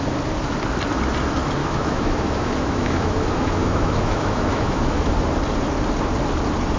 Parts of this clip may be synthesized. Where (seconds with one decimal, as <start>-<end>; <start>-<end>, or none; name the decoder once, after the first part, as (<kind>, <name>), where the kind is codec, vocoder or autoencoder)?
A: 1.6-5.1 (autoencoder, DAC-VAE)